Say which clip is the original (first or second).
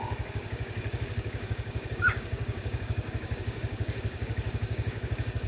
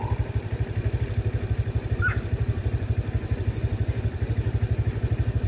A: second